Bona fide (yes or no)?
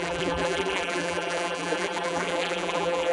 no